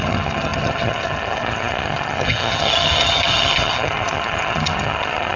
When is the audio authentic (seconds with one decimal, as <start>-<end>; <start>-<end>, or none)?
none